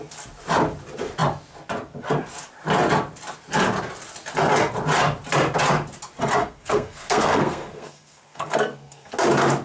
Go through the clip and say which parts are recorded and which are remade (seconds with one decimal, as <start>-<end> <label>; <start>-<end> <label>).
0.0-6.4 recorded; 6.4-9.1 remade; 9.1-9.6 recorded